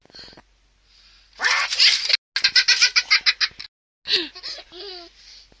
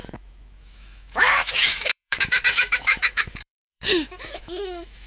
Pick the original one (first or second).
first